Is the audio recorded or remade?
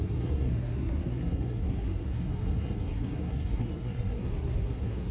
remade